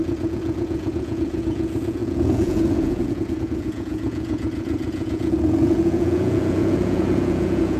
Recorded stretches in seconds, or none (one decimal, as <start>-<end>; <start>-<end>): none